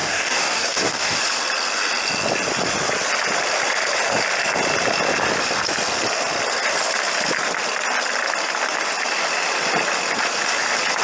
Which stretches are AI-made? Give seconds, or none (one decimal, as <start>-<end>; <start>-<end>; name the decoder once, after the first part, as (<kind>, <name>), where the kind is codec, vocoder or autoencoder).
0.0-1.2 (codec, DAC)